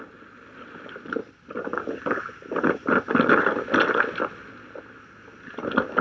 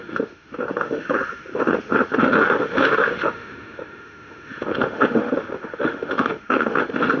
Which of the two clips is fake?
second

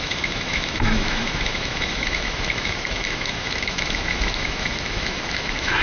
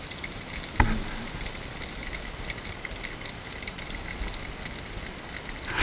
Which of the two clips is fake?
first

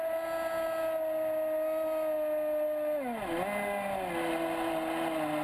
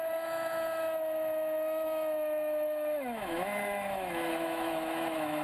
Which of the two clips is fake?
second